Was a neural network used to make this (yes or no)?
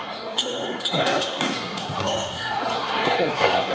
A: yes